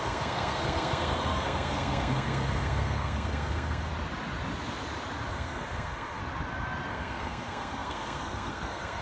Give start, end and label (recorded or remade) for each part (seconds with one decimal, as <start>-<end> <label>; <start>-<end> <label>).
0.0-3.9 remade; 3.9-5.3 recorded; 5.3-6.2 remade; 6.2-6.9 recorded; 6.9-9.0 remade